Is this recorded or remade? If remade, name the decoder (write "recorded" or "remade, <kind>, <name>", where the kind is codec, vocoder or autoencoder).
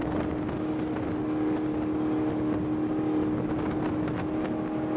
recorded